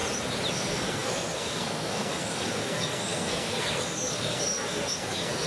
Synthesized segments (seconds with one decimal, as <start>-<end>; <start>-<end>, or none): 0.5-5.5